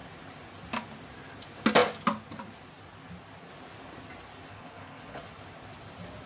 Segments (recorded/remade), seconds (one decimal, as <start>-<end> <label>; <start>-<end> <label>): 0.0-4.5 recorded; 4.5-5.2 remade; 5.2-6.3 recorded